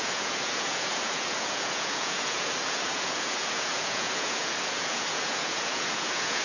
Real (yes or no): no